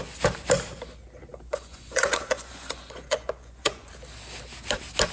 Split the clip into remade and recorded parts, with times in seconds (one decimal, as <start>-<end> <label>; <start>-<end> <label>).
0.0-1.3 recorded; 1.3-3.9 remade; 3.9-5.1 recorded